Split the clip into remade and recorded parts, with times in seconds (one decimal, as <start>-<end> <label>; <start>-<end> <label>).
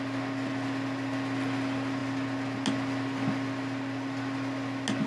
0.0-5.1 recorded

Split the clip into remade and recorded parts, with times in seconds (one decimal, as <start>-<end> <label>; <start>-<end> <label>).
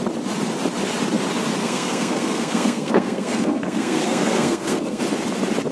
0.0-1.6 recorded; 1.6-5.0 remade; 5.0-5.7 recorded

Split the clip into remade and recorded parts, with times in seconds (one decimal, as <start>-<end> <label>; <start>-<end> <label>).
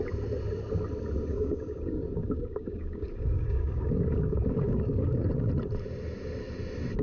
0.0-1.3 recorded; 1.3-5.5 remade; 5.5-7.0 recorded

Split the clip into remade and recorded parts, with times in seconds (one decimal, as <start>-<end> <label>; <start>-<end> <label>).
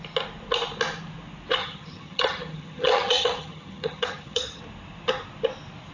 0.0-1.6 recorded; 1.6-4.6 remade; 4.6-5.9 recorded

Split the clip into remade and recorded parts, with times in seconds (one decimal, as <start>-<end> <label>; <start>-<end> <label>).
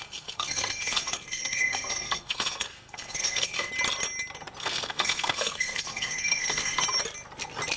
0.0-3.7 remade; 3.7-4.6 recorded; 4.6-6.8 remade; 6.8-7.8 recorded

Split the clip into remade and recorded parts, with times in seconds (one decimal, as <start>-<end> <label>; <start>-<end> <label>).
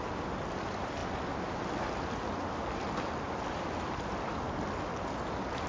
0.0-5.7 recorded